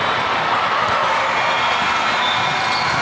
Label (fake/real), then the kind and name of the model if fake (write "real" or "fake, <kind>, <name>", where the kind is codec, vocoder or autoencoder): real